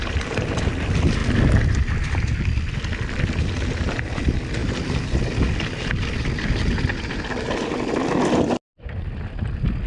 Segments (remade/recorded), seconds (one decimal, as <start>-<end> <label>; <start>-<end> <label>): 0.0-9.9 recorded